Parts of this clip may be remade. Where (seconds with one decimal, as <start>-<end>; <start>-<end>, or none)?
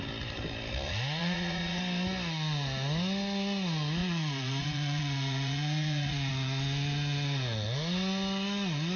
1.2-1.8; 4.0-6.3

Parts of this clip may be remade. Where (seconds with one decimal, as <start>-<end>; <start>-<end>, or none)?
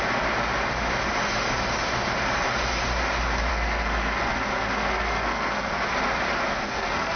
3.5-5.7; 6.5-7.2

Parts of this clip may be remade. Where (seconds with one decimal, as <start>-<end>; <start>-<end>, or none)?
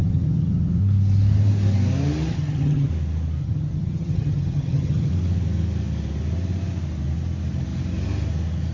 0.0-0.8; 2.3-2.9; 3.4-5.1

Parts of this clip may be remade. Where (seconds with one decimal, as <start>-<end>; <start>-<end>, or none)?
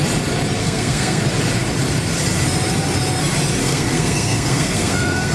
0.6-1.2; 3.6-5.3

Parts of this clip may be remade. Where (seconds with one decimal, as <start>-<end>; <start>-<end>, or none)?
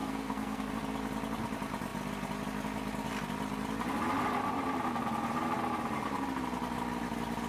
0.0-0.7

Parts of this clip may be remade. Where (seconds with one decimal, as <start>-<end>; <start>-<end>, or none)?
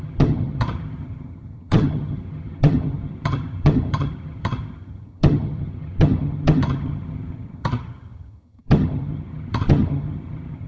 0.0-10.7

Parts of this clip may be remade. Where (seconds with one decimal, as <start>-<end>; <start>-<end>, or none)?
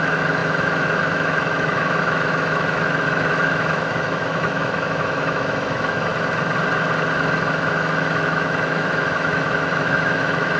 0.0-6.1; 7.5-10.6